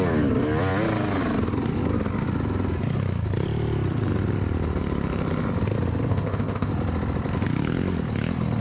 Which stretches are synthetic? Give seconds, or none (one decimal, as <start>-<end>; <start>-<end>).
6.1-6.7